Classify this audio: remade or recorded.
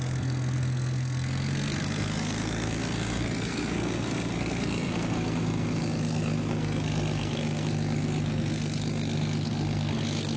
remade